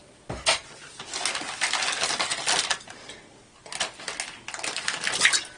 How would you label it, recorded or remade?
recorded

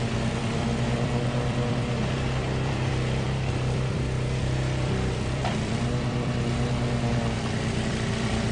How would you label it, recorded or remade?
remade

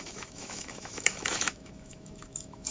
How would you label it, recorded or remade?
remade